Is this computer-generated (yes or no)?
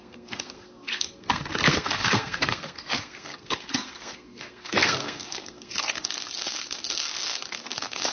yes